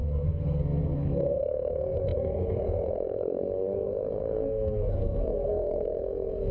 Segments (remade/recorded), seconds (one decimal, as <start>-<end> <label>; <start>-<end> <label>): 0.0-6.5 remade